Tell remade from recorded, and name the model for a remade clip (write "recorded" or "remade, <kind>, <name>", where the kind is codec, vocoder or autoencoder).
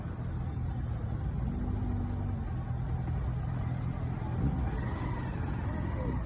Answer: recorded